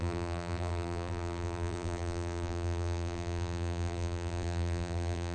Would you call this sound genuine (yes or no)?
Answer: no